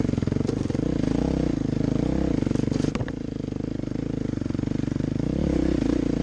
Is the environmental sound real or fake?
real